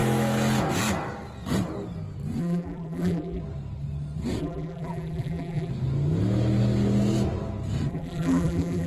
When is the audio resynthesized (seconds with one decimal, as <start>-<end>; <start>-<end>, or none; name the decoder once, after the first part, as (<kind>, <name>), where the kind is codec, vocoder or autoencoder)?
2.4-3.4 (vocoder, BigVGAN v2); 4.4-5.7; 7.9-8.9